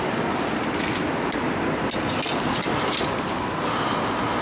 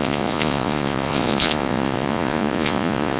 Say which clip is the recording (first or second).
first